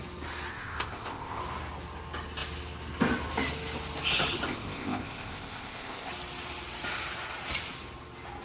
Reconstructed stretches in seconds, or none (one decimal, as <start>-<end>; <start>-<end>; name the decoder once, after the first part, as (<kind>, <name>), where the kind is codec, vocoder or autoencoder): 0.5-1.4 (codec, ZipCodec); 4.5-6.1